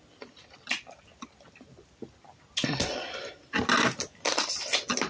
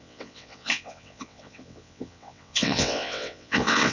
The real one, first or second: first